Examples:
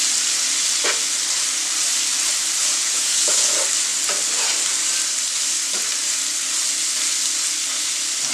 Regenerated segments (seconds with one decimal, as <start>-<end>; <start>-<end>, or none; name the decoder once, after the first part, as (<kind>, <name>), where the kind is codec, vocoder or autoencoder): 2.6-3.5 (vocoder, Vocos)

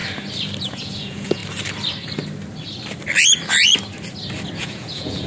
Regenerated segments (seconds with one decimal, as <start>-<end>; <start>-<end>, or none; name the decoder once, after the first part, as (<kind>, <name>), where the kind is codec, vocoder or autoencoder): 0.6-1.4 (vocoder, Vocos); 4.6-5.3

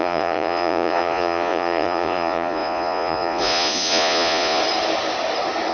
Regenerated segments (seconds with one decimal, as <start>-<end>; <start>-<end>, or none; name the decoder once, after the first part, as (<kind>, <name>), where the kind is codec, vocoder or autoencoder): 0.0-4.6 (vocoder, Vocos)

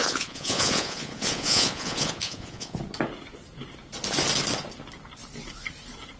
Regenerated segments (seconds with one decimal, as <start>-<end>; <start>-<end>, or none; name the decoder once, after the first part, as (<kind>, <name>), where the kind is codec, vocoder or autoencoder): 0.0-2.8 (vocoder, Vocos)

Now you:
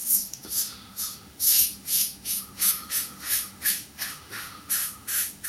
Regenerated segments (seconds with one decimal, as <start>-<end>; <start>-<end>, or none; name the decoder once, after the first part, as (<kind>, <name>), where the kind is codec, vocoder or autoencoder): 0.0-5.5 (autoencoder, DAC-VAE)

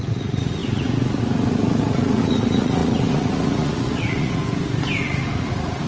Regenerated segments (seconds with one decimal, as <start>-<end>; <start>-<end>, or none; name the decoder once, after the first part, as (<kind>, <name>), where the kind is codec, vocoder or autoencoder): 0.0-4.4 (vocoder, Vocos); 5.0-5.9

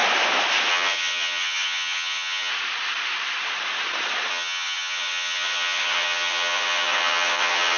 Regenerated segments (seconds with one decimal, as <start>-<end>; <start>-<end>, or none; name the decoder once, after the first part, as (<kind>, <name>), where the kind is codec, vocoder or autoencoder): 0.7-2.5 (vocoder, HiFi-GAN); 4.3-7.8

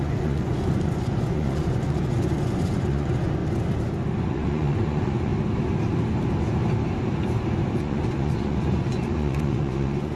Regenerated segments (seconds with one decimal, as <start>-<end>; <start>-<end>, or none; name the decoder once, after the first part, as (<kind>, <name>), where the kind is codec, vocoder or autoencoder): 0.0-3.4 (vocoder, Vocos); 4.3-5.3; 7.8-10.2